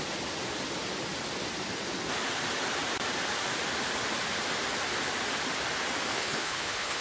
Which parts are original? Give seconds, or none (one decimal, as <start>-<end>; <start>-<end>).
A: 0.0-6.1